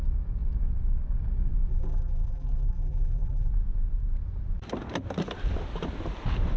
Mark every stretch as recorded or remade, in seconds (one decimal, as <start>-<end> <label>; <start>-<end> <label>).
0.0-1.7 recorded; 1.7-3.5 remade; 3.5-6.6 recorded